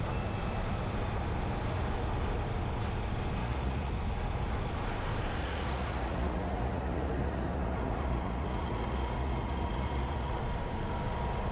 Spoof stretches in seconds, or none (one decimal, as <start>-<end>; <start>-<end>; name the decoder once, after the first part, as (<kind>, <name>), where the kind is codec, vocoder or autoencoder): 3.4-3.9 (vocoder, Vocos); 5.4-10.4